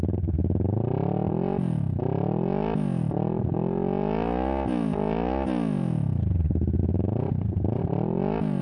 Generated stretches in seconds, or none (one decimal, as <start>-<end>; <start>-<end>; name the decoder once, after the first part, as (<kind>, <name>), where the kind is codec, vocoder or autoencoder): 6.8-7.8 (vocoder, Vocos)